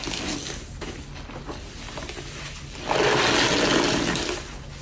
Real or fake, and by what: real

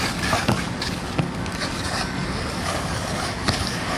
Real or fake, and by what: fake, codec, DAC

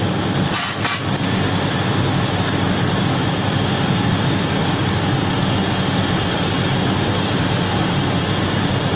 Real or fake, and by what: real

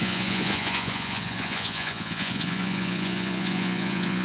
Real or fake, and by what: fake, vocoder, Vocos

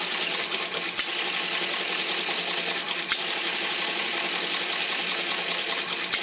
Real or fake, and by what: real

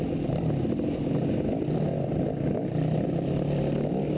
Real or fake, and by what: real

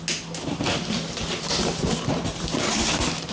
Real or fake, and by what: real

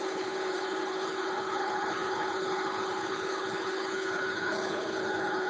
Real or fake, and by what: fake, codec, HILCodec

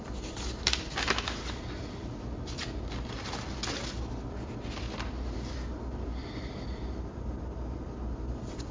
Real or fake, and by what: real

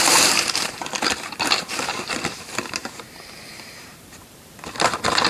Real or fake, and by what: fake, vocoder, BigVGAN v2